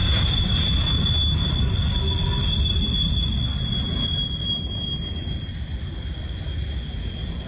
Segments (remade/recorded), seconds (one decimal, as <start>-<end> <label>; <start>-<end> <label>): 0.0-0.6 remade; 0.6-7.5 recorded